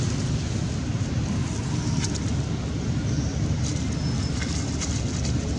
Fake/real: real